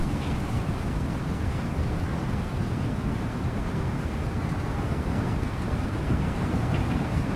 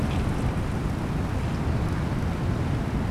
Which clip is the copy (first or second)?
first